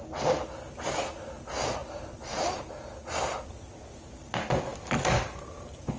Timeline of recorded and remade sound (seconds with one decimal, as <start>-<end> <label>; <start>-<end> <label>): 0.0-6.0 recorded